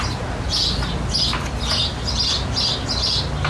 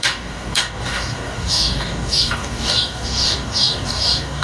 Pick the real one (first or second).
first